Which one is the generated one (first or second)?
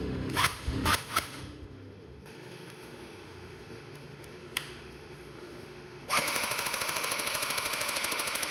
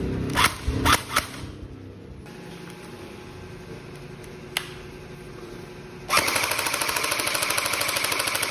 first